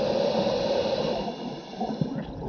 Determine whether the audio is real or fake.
real